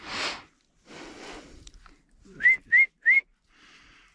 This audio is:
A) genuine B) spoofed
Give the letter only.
A